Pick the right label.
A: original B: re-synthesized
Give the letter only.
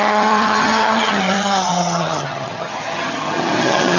B